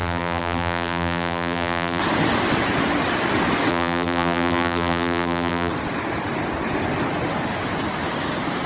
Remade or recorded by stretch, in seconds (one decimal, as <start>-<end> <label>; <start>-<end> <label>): 0.0-2.0 remade; 2.0-3.7 recorded; 3.7-5.7 remade; 5.7-8.7 recorded